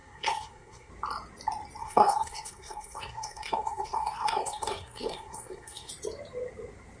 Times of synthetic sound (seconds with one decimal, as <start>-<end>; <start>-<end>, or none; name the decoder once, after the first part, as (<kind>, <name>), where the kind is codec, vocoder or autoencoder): 0.0-0.9 (codec, SNAC); 1.8-5.9